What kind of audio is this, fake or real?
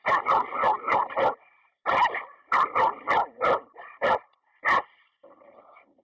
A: fake